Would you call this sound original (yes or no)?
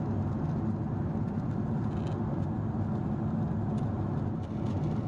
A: yes